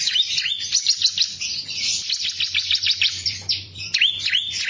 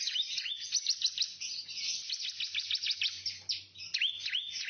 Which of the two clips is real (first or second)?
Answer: second